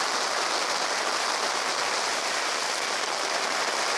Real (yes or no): yes